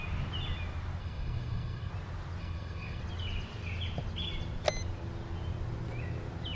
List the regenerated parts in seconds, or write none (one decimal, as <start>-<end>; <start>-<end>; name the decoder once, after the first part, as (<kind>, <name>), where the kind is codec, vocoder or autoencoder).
1.0-1.9 (codec, SNAC); 2.4-3.0

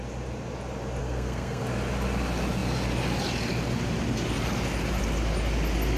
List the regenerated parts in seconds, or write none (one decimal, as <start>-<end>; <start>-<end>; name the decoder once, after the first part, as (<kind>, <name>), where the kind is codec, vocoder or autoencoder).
1.0-1.6 (codec, SNAC)